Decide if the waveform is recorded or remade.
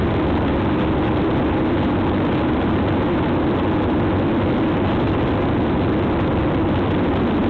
recorded